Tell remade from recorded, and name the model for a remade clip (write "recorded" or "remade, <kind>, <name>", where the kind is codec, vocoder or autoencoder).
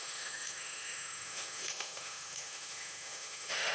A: remade, autoencoder, DAC-VAE